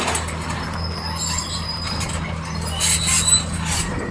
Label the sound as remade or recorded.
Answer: recorded